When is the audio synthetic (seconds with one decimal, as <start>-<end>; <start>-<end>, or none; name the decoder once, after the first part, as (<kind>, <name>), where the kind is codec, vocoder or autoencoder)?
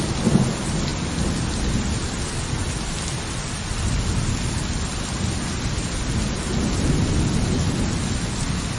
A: none